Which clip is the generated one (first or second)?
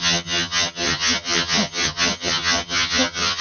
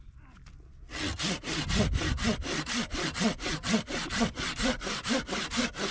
first